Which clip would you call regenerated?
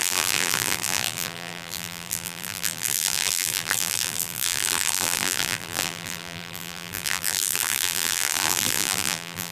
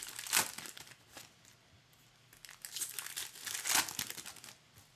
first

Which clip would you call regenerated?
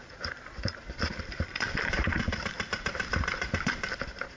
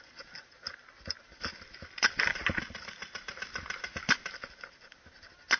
first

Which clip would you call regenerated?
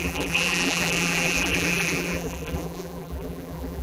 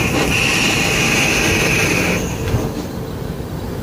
first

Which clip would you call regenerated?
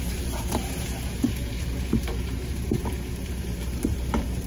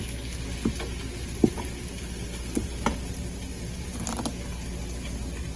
first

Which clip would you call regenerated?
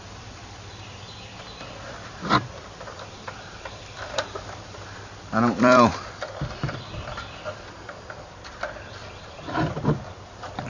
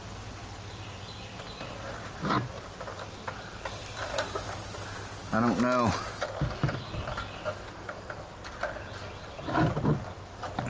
first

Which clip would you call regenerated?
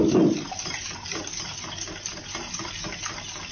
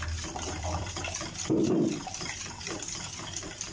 second